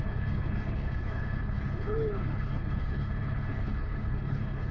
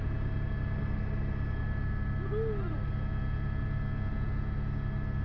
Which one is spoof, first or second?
first